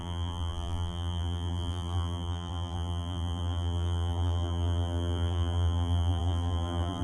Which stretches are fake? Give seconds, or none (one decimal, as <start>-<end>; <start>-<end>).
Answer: 0.0-7.0